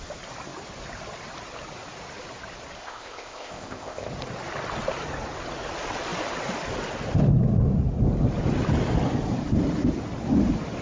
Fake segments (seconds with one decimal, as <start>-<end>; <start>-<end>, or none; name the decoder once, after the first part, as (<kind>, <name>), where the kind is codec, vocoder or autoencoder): 2.8-4.1 (codec, ZipCodec)